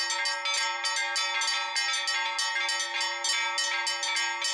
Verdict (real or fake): real